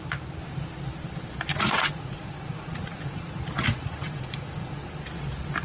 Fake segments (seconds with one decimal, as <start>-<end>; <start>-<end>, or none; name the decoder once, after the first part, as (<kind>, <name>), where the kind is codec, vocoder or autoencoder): 1.5-4.9 (vocoder, Vocos)